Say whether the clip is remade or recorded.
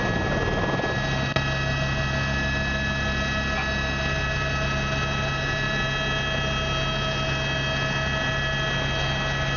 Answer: recorded